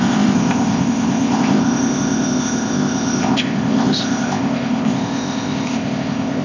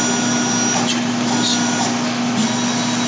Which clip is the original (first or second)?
second